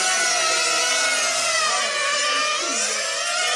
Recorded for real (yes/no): yes